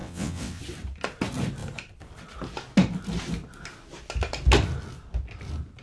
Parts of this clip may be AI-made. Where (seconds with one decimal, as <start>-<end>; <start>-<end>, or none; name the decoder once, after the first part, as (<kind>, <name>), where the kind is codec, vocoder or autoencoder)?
0.0-0.6 (vocoder, WaveNeXt)